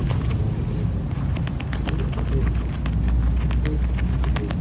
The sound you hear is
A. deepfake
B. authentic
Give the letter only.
B